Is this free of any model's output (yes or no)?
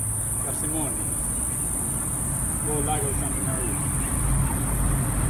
yes